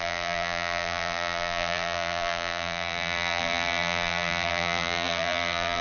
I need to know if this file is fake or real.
fake